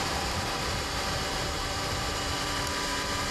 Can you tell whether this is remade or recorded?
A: remade